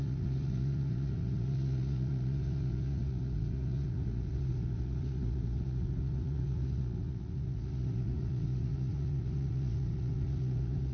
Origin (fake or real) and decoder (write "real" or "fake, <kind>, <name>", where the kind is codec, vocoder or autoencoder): fake, vocoder, Vocos